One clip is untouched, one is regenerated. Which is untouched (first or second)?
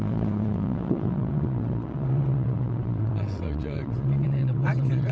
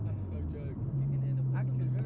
second